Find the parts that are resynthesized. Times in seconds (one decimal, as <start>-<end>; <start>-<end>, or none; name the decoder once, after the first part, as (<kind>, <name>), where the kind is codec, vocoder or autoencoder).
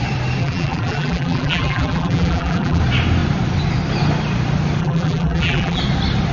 0.4-2.8 (vocoder, BigVGAN v2); 4.8-5.8